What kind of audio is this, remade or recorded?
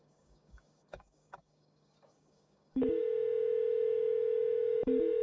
remade